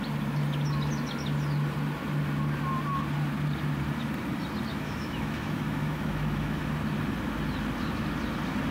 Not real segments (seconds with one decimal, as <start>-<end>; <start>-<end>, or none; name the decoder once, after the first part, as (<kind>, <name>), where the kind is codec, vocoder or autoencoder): 4.7-6.6 (autoencoder, DAC-VAE)